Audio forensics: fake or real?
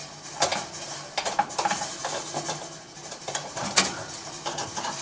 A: real